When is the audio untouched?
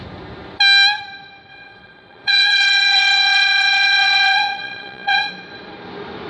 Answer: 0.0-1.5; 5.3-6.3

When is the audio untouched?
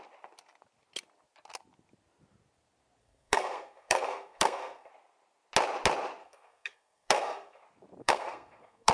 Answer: 0.0-3.0; 4.9-6.2; 7.6-8.0